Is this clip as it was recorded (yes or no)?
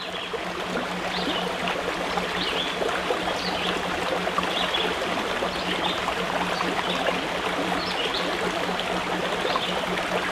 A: yes